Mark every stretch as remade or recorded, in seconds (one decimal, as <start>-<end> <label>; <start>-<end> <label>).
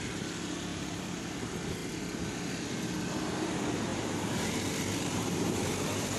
0.0-0.7 recorded; 0.7-1.3 remade; 1.3-3.9 recorded; 3.9-6.2 remade